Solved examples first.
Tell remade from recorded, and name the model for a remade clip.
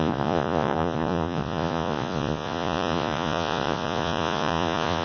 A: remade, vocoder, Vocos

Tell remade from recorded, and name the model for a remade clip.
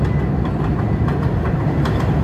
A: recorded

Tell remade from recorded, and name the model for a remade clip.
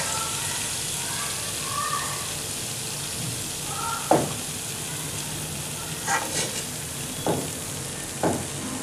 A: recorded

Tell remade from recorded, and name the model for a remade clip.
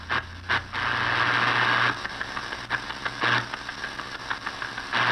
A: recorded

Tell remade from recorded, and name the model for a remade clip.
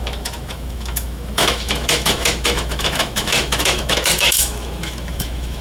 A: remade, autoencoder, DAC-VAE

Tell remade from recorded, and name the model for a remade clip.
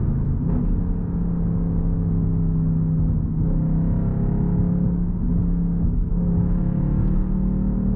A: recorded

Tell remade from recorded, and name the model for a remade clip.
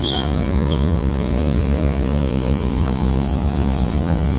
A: remade, vocoder, Vocos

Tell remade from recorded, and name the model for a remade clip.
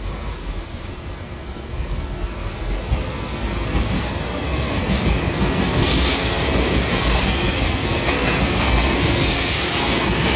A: remade, codec, SNAC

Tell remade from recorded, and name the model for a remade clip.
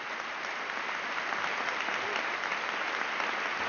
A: recorded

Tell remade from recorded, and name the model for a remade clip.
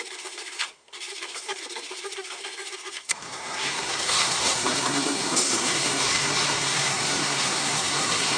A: remade, codec, SNAC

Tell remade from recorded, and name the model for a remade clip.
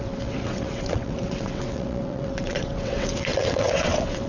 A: remade, vocoder, WaveNeXt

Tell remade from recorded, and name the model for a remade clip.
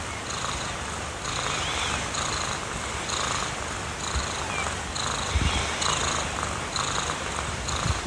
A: recorded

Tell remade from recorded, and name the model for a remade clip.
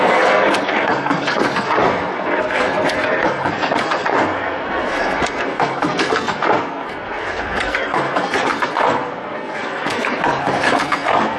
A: remade, codec, SNAC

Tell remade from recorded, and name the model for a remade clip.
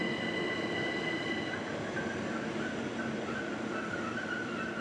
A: recorded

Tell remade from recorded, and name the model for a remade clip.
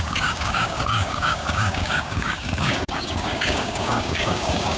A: remade, codec, DAC